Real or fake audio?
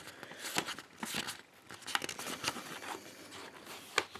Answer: real